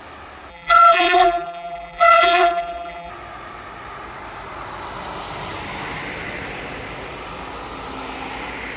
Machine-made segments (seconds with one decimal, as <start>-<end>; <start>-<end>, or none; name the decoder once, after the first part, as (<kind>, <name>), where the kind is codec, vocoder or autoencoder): 0.5-3.1 (vocoder, BigVGAN v2)